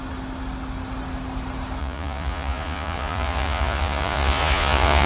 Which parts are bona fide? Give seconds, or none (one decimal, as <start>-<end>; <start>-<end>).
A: 0.0-1.8